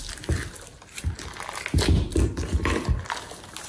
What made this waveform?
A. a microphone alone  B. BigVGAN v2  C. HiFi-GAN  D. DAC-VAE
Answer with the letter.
A